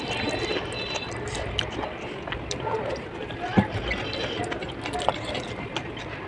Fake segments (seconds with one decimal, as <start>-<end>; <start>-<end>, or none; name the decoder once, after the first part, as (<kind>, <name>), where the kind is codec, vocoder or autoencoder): none